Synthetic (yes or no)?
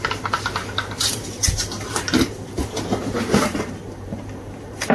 yes